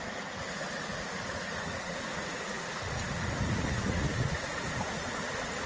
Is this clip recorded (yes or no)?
no